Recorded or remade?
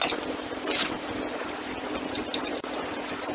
recorded